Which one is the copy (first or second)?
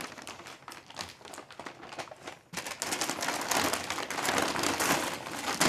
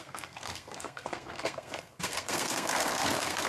second